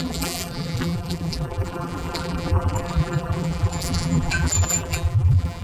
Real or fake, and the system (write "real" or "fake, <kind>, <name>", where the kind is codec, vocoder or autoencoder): fake, vocoder, BigVGAN v2